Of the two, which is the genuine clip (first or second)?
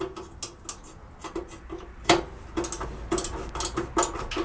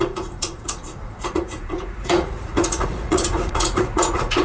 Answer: first